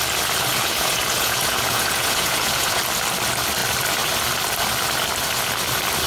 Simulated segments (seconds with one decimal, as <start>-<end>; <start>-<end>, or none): 0.5-2.8